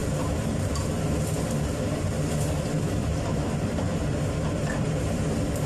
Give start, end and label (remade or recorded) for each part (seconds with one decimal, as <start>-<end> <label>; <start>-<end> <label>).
0.0-0.9 remade; 0.9-3.0 recorded; 3.0-5.7 remade